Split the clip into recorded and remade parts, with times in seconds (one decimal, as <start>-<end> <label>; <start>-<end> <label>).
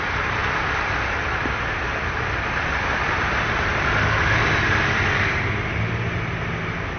0.0-7.0 recorded